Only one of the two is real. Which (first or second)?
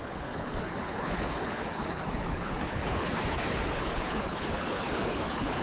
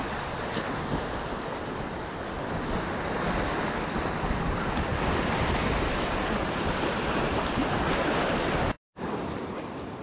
second